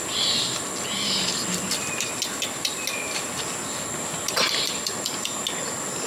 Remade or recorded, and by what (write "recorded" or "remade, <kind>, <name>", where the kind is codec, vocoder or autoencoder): recorded